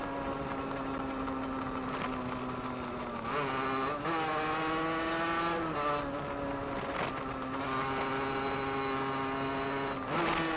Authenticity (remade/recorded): recorded